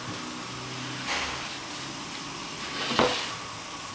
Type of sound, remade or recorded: recorded